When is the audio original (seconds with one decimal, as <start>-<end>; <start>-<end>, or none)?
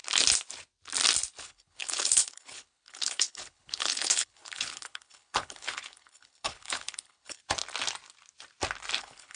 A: 0.0-1.4; 7.4-9.0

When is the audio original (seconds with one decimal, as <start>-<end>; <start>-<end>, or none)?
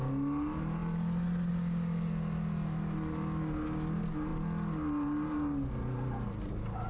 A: 0.0-6.9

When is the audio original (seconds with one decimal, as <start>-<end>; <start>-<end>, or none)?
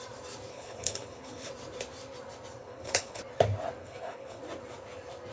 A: 0.0-0.5; 1.5-2.6; 3.2-3.8; 4.4-5.3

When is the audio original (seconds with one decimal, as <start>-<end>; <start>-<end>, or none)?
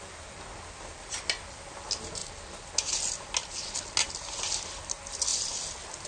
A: 0.0-6.1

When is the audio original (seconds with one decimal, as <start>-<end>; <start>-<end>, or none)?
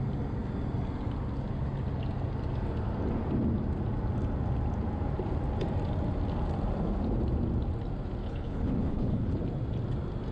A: 0.0-8.2; 9.4-10.3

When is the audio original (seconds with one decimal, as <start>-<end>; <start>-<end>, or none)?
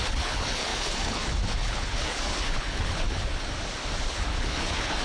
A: 3.3-4.1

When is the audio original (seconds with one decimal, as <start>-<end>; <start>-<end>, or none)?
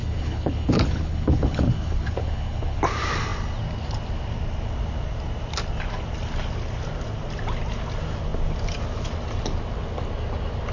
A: 2.8-10.7